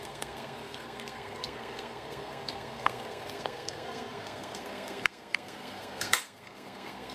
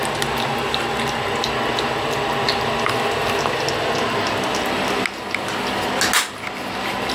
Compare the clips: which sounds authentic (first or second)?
second